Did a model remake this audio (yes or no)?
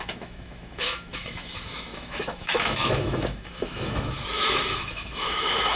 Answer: yes